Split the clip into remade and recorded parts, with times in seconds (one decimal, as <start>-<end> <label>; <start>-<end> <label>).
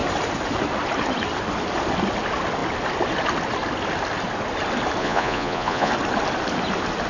0.0-5.0 recorded; 5.0-5.9 remade; 5.9-7.1 recorded